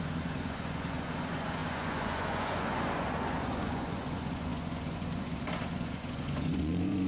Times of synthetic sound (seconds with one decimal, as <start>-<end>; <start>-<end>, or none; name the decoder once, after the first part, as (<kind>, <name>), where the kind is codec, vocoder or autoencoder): 0.0-7.1 (vocoder, Vocos)